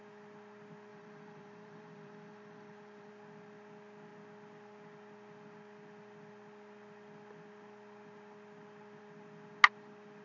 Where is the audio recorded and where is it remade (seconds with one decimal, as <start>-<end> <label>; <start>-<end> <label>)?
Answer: 0.0-0.9 recorded; 0.9-3.1 remade; 3.1-10.2 recorded